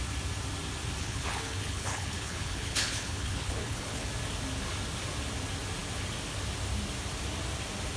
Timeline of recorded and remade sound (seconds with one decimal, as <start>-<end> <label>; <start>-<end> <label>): 0.0-1.0 recorded; 1.0-4.1 remade; 4.1-8.0 recorded

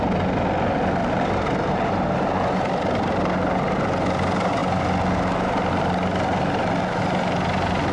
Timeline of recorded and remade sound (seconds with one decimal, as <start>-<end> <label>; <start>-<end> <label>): 0.0-1.0 recorded; 1.0-3.2 remade; 3.2-7.9 recorded

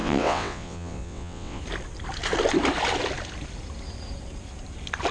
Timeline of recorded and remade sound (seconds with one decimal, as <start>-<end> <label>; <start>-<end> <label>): 0.0-1.6 remade; 1.6-5.1 recorded